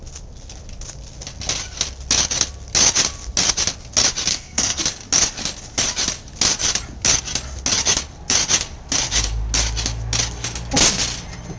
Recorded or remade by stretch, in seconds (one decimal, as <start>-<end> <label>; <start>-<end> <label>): 0.0-4.3 recorded; 4.3-4.8 remade; 4.8-11.6 recorded